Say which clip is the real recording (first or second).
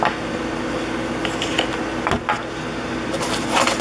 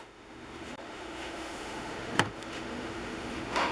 first